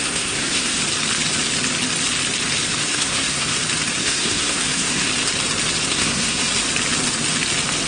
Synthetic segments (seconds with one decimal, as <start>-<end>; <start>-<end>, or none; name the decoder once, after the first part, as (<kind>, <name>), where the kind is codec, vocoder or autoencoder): 0.0-0.8 (codec, SNAC); 2.8-3.5; 4.0-5.1; 5.9-6.5